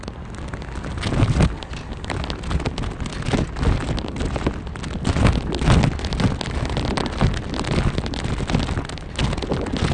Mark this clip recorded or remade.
recorded